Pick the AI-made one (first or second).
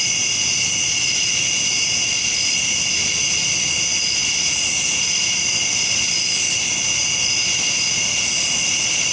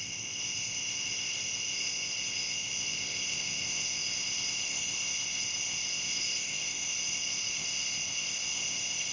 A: second